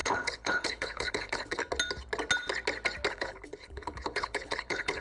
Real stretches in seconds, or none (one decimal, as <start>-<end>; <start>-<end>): 1.6-3.1

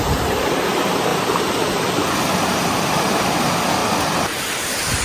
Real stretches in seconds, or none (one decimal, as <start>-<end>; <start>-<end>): 0.0-3.8; 4.4-5.0

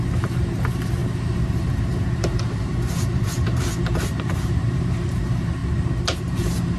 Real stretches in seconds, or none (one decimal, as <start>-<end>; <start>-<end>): 5.6-6.2

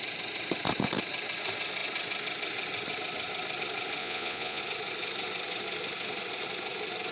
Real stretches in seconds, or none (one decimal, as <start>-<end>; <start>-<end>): 0.0-4.0; 4.6-7.1

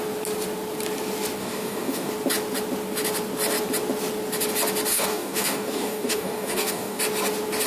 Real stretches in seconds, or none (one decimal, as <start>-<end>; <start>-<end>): 0.0-1.4; 2.1-4.9; 7.0-7.7